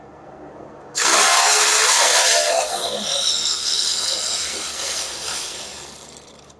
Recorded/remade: remade